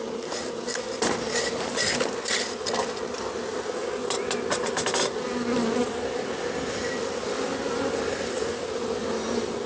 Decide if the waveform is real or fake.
real